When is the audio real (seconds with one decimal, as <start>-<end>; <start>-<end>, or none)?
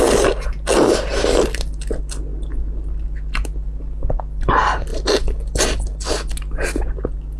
0.0-7.4